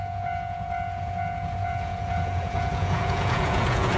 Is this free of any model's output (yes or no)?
no